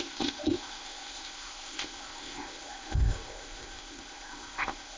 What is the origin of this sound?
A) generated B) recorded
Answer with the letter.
A